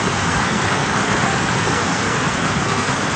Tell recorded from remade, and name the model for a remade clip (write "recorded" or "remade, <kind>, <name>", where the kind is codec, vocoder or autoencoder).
remade, codec, SNAC